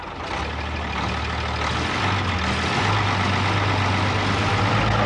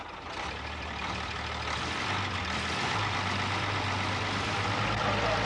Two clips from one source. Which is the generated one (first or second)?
second